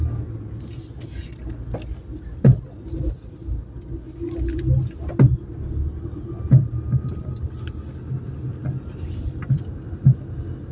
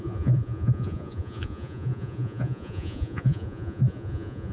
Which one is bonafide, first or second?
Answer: first